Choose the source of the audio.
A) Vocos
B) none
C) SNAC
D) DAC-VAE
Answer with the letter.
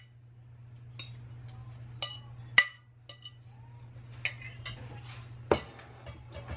B